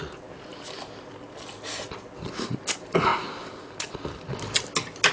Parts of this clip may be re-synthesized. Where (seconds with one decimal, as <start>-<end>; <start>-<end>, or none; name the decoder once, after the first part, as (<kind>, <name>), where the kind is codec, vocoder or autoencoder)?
none